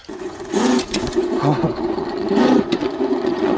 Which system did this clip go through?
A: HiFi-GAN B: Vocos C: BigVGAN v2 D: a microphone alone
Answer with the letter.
B